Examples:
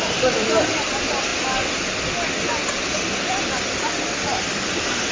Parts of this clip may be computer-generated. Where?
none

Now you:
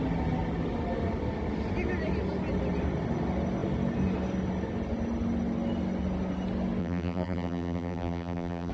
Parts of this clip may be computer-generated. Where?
6.8-8.7 (vocoder, BigVGAN v2)

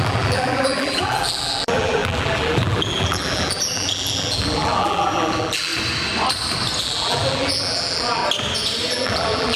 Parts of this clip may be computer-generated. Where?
0.0-5.7 (vocoder, BigVGAN v2); 6.8-8.2; 8.9-9.6

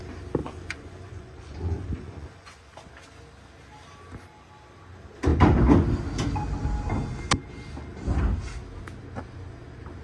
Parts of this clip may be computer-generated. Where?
0.4-2.9 (vocoder, Vocos)

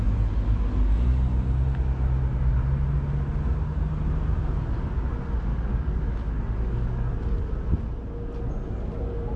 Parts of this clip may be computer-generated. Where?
5.5-7.1 (codec, DAC)

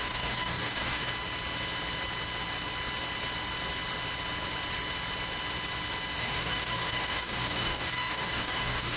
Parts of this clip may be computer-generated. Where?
0.0-1.1 (codec, DAC); 6.2-9.0

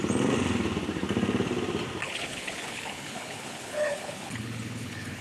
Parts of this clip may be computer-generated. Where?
2.0-5.2 (codec, HILCodec)